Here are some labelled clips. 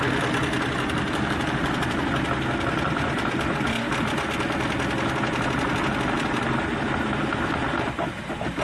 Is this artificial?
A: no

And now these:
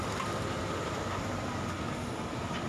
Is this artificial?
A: no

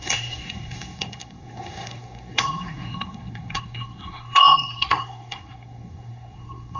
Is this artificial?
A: yes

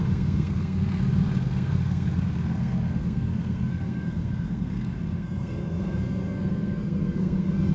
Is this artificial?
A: yes